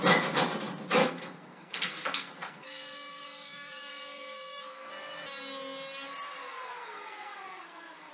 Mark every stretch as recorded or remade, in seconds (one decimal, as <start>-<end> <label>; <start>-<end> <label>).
0.0-1.0 recorded; 1.0-4.9 remade; 4.9-6.5 recorded; 6.5-8.1 remade